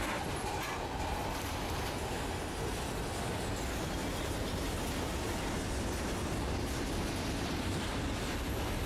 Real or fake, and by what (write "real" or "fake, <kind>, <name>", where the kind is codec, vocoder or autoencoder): real